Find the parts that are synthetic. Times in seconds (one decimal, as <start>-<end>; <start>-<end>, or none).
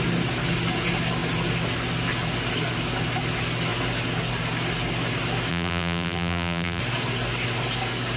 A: 5.5-6.8